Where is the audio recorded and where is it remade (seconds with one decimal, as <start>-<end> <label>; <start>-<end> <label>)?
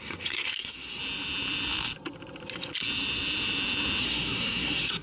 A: 0.0-1.0 remade; 1.0-4.0 recorded; 4.0-5.0 remade